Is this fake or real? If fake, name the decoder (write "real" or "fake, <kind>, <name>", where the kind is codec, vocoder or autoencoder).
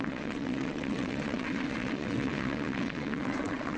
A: fake, vocoder, WaveNeXt